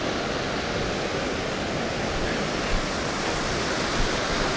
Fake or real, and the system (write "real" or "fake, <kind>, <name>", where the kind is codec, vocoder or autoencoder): real